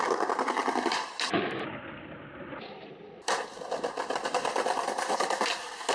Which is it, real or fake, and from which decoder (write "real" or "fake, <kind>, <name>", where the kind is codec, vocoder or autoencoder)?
fake, vocoder, BigVGAN v2